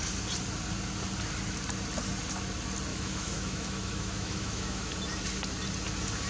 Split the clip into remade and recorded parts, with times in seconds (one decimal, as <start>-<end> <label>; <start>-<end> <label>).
0.0-2.9 recorded; 2.9-5.0 remade; 5.0-6.3 recorded